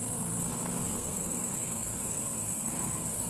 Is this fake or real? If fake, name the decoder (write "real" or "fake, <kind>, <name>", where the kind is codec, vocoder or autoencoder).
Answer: fake, codec, SNAC